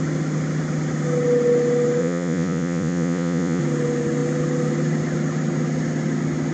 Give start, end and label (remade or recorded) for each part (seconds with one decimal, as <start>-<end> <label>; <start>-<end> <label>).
0.0-2.0 recorded; 2.0-3.6 remade; 3.6-6.5 recorded